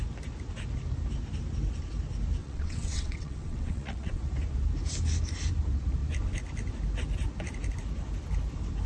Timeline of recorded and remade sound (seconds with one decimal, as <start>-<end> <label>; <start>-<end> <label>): 0.0-2.4 recorded; 2.4-4.2 remade; 4.2-8.9 recorded